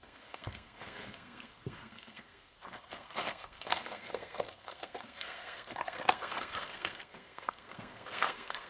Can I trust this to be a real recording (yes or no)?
no